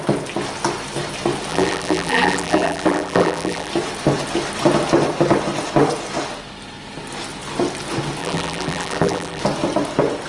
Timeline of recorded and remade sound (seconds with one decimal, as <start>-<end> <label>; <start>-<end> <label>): 0.0-1.5 recorded; 1.5-3.7 remade; 3.7-8.2 recorded; 8.2-9.4 remade; 9.4-10.3 recorded